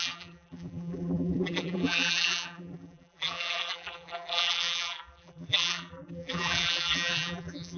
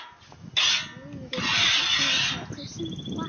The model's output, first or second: first